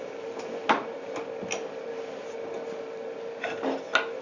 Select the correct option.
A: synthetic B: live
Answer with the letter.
B